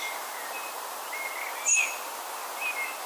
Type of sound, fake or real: real